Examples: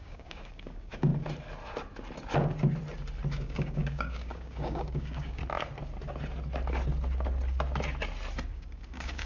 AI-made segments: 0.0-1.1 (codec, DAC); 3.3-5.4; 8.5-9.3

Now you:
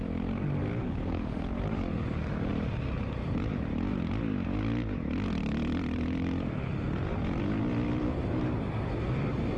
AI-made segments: 0.6-2.5 (codec, DAC)

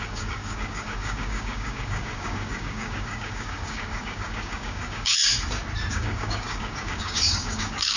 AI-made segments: 0.0-5.2 (codec, DAC); 5.9-8.0

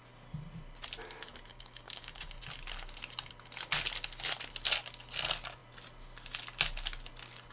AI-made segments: 1.5-2.4 (codec, DAC)

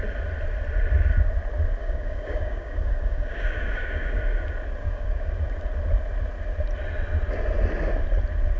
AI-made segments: 1.8-4.2 (codec, DAC); 4.8-5.3

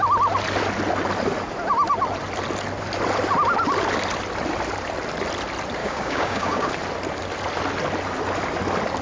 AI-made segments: 5.8-6.7 (codec, DAC)